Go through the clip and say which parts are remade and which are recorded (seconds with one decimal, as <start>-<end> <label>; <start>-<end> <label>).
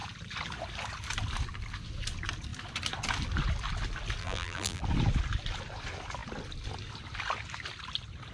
0.0-4.2 recorded; 4.2-4.8 remade; 4.8-8.3 recorded